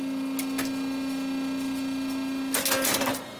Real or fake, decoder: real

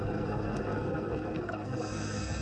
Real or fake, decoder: fake, codec, SNAC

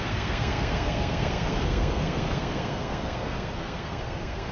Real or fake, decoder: fake, codec, SNAC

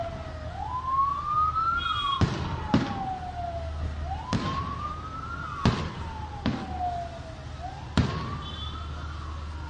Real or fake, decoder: real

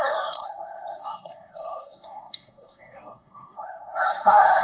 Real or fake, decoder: fake, codec, SNAC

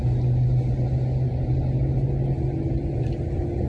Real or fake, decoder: real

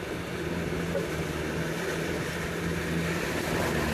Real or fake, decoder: real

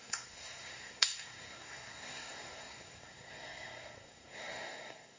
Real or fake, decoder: fake, codec, SNAC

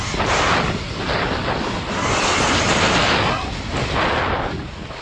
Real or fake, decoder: real